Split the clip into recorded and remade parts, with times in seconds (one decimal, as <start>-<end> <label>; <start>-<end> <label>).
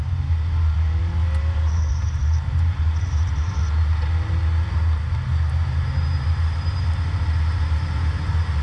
0.0-2.2 recorded; 2.2-3.6 remade; 3.6-8.6 recorded